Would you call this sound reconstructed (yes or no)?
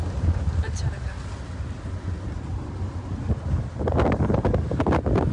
no